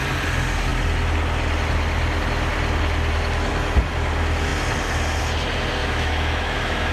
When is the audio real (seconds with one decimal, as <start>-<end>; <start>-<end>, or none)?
0.0-5.8